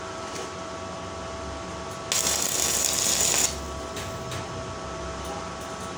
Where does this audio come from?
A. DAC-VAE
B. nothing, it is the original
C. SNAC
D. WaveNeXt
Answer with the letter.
B